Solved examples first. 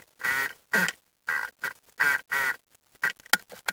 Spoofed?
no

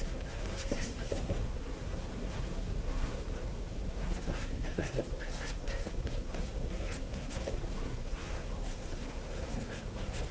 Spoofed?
yes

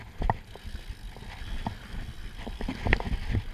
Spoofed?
no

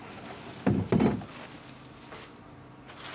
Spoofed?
no